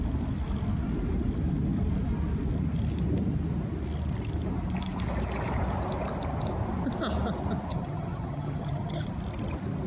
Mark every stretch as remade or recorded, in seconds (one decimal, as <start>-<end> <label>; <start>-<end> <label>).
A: 0.0-7.7 recorded; 7.7-9.1 remade; 9.1-9.9 recorded